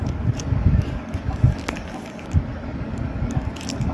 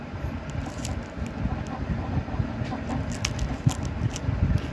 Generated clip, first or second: first